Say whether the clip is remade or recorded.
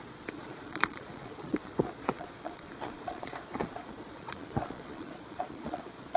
remade